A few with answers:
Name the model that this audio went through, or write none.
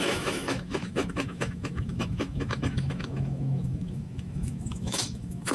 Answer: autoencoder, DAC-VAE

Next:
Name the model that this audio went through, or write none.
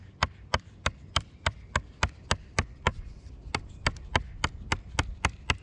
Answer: none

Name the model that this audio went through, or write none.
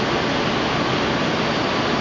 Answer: none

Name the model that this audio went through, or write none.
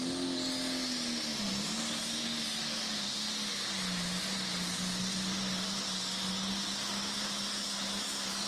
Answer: none